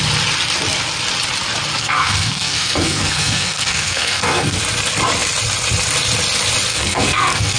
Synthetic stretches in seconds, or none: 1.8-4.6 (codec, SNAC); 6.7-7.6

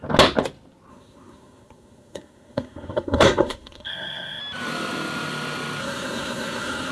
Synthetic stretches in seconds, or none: 0.9-4.4 (codec, SNAC); 5.8-6.9

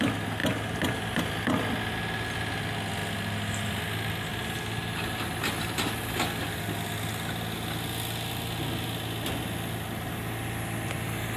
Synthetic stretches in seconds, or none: none

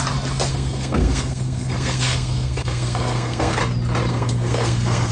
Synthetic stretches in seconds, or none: 0.5-3.6 (codec, SNAC); 4.1-5.1

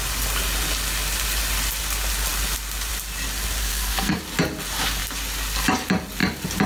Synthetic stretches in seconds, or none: 3.6-4.2 (codec, SNAC)

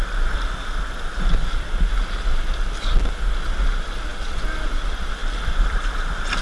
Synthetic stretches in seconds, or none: none